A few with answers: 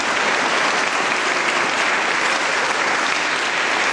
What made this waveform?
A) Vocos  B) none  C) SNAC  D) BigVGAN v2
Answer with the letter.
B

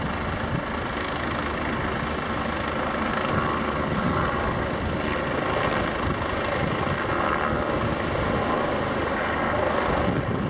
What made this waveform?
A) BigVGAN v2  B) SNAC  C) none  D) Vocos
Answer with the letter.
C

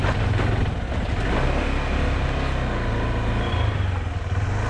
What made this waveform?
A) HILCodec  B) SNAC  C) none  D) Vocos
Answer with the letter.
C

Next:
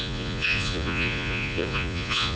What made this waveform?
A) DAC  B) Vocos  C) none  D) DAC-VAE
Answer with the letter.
B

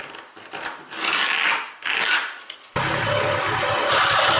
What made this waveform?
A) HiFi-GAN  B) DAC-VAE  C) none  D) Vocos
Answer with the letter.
C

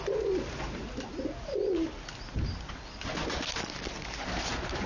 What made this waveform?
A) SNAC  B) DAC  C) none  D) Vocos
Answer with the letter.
C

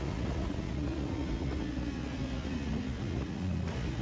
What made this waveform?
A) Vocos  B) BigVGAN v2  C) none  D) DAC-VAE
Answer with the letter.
A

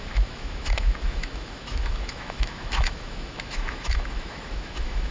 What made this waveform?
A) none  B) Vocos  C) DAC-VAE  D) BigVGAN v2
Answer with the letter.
C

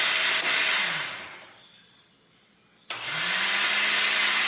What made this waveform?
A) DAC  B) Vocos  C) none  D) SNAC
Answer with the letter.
C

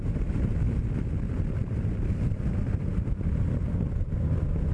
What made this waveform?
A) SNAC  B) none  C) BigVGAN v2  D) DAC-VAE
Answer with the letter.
C